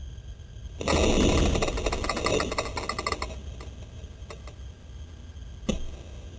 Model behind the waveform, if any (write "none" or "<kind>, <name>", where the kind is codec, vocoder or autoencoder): none